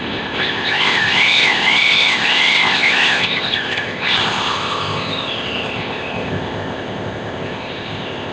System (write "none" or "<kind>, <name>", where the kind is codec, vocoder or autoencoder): codec, ZipCodec